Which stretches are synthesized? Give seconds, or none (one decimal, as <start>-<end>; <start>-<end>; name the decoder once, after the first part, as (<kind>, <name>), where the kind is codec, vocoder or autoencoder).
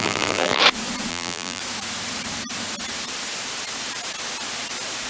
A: 0.0-0.6 (vocoder, BigVGAN v2); 1.1-1.6